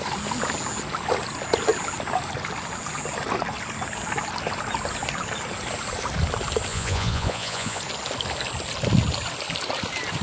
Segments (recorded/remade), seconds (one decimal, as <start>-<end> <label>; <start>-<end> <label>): 0.0-6.7 recorded; 6.7-7.8 remade; 7.8-10.2 recorded